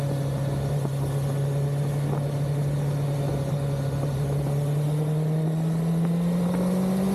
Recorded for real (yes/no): yes